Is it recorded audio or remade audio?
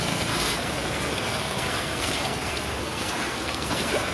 remade